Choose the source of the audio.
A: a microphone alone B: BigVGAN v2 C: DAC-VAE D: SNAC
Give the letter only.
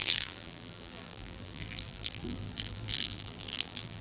B